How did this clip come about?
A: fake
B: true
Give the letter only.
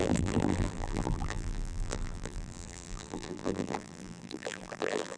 A